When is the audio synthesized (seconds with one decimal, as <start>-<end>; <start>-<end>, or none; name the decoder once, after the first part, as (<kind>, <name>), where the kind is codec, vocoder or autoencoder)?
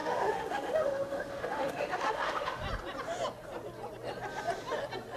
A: 0.0-2.6 (autoencoder, DAC-VAE)